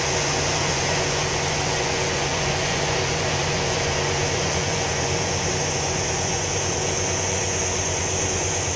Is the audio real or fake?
fake